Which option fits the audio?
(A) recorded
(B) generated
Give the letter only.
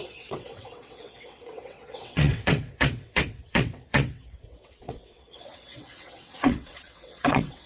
B